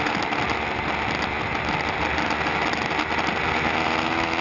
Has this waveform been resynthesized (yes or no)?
no